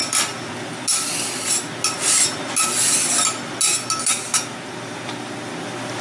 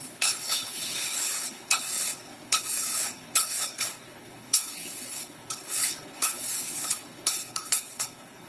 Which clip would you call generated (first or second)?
second